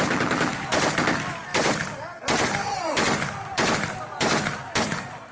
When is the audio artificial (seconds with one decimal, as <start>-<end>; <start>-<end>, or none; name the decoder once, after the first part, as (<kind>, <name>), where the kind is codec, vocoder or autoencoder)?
none